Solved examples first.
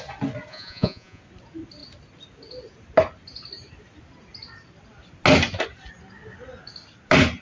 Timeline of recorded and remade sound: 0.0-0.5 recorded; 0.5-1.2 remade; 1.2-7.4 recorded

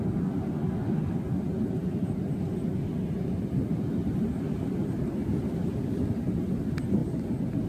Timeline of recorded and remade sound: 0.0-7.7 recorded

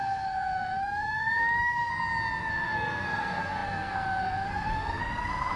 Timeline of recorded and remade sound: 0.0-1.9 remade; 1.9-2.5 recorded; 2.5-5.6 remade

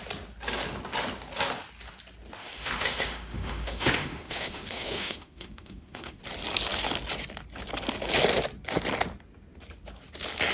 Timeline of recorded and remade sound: 0.0-2.4 recorded; 2.4-6.2 remade; 6.2-10.5 recorded

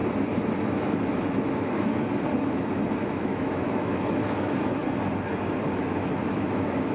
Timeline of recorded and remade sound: 0.0-0.8 recorded; 0.8-1.9 remade; 1.9-2.9 recorded; 2.9-4.8 remade; 4.8-5.8 recorded; 5.8-6.9 remade